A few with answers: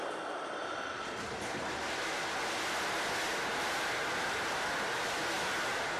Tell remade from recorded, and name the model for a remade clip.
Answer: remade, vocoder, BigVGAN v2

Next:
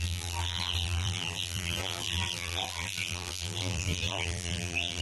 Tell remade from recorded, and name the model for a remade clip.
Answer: remade, vocoder, BigVGAN v2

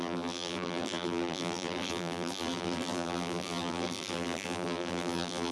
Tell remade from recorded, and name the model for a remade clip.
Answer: remade, vocoder, BigVGAN v2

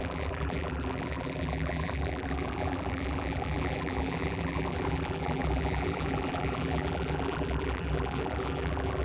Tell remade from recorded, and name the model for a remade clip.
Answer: remade, vocoder, BigVGAN v2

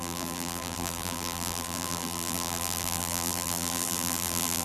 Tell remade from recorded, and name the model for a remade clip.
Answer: remade, vocoder, BigVGAN v2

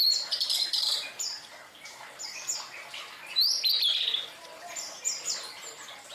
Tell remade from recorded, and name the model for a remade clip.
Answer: remade, vocoder, BigVGAN v2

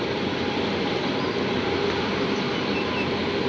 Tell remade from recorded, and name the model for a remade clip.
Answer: remade, vocoder, BigVGAN v2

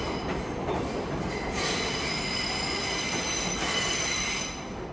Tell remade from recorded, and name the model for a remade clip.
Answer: recorded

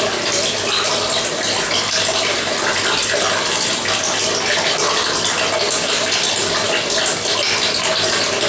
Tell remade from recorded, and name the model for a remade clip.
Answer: recorded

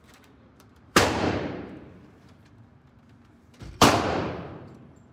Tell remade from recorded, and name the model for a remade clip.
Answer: remade, vocoder, BigVGAN v2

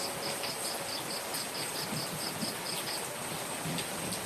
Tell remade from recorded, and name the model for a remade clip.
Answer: recorded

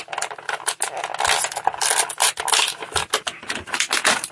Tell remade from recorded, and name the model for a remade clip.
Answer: recorded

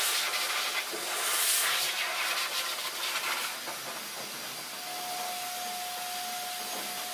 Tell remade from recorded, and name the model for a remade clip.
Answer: recorded